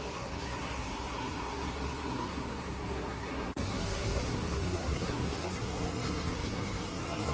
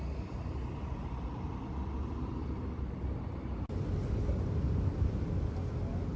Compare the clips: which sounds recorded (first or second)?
second